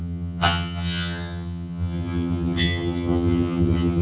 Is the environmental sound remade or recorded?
remade